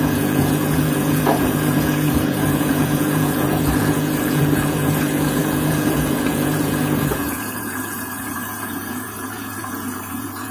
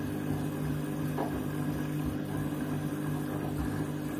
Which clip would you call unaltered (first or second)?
second